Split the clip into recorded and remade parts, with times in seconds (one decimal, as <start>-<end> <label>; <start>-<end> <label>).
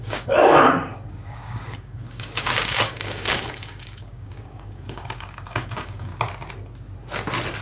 0.0-6.1 remade; 6.1-7.6 recorded